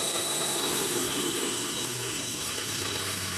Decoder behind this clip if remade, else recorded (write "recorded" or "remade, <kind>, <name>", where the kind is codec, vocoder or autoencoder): remade, codec, SNAC